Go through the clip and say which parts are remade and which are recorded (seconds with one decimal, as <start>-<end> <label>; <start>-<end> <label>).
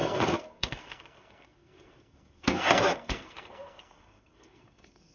0.0-5.1 remade